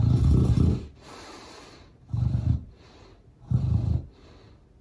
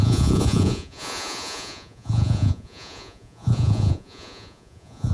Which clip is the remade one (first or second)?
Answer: second